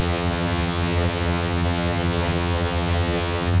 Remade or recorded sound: remade